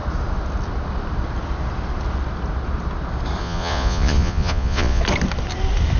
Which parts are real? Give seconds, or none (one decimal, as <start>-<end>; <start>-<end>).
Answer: 0.0-3.4; 5.0-6.0

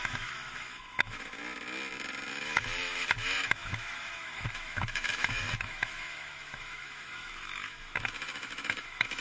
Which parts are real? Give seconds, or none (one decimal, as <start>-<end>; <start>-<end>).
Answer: 1.4-2.3

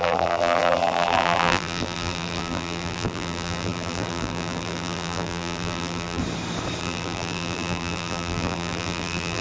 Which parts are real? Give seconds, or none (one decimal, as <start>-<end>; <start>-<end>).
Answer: 6.2-6.8

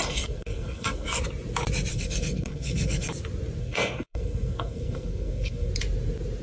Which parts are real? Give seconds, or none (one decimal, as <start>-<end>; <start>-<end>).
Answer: 1.2-1.9; 3.1-3.6; 5.7-6.4

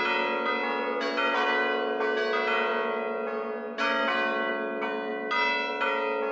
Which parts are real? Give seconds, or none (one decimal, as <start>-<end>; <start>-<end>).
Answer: 0.0-6.3

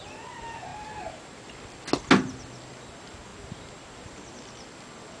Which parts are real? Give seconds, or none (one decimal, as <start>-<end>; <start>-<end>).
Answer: 0.0-0.7; 1.5-5.2

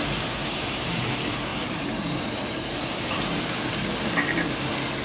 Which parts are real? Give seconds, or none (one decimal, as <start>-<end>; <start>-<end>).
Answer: 0.0-0.4; 1.1-1.5; 3.2-5.0

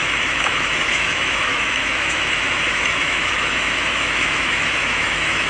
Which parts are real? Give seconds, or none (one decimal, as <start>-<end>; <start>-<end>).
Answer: none